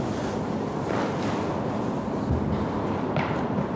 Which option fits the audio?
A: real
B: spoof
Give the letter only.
A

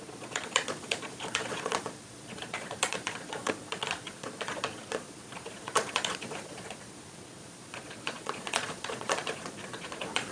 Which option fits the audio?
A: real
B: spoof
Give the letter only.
B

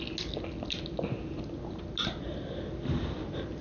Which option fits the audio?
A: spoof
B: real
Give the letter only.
B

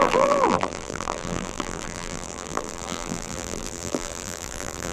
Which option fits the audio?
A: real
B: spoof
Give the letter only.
B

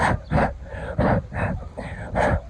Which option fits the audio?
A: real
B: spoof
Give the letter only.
A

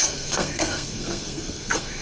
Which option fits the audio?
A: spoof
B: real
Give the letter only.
A